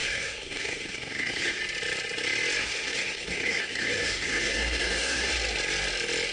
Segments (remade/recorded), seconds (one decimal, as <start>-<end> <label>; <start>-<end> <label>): 0.0-1.6 remade; 1.6-2.6 recorded; 2.6-5.3 remade; 5.3-6.3 recorded